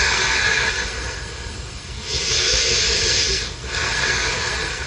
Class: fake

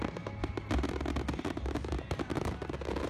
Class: real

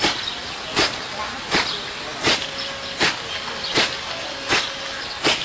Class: real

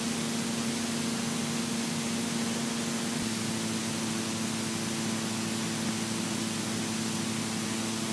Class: real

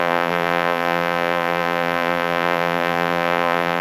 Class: fake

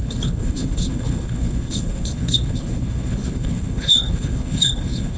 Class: fake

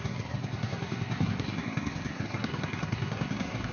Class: fake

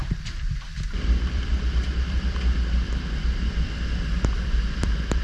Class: fake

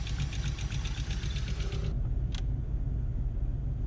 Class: real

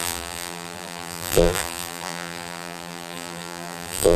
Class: fake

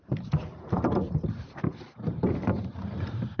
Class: fake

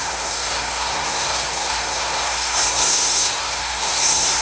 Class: fake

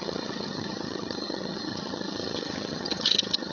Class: fake